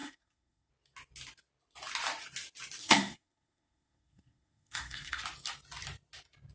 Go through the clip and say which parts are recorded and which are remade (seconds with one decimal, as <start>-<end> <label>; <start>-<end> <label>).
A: 0.0-0.7 remade; 0.7-2.8 recorded; 2.8-5.2 remade; 5.2-6.5 recorded